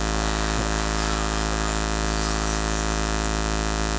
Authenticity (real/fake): real